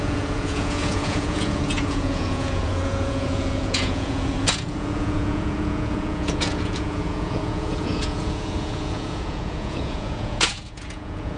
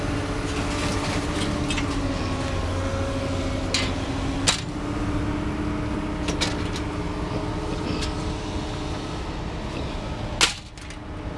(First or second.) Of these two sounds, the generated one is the first